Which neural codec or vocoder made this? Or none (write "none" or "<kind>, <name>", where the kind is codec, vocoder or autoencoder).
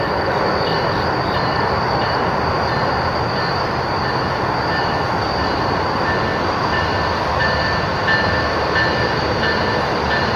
none